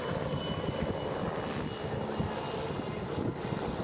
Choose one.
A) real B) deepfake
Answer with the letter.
A